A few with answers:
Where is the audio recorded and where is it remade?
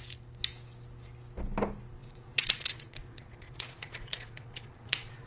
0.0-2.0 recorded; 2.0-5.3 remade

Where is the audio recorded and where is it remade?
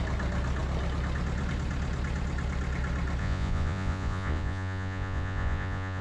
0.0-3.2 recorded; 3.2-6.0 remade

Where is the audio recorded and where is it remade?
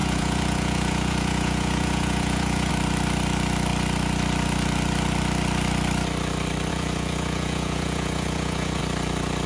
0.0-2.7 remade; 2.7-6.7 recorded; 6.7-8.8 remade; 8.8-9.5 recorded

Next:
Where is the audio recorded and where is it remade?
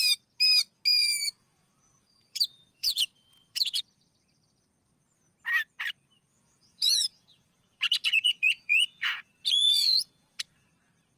0.0-0.9 recorded; 0.9-3.8 remade; 3.8-6.3 recorded; 6.3-10.7 remade; 10.7-11.2 recorded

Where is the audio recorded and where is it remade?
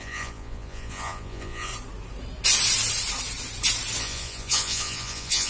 0.0-1.7 remade; 1.7-4.0 recorded; 4.0-5.5 remade